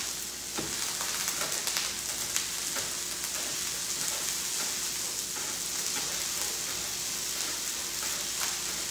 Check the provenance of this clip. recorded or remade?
recorded